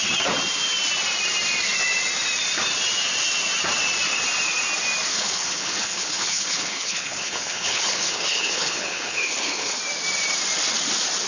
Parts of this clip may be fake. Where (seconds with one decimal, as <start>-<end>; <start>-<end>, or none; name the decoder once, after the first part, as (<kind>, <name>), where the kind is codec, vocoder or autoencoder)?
5.1-9.8 (codec, HILCodec)